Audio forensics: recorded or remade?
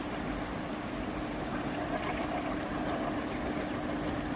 recorded